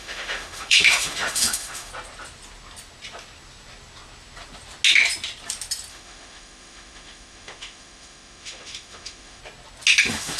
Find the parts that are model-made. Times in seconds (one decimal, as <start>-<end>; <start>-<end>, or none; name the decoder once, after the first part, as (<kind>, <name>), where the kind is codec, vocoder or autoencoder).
0.0-1.9 (autoencoder, DAC-VAE); 5.9-9.4; 10.0-10.4